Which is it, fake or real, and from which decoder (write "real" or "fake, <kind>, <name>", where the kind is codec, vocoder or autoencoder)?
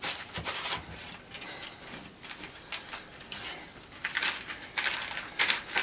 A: real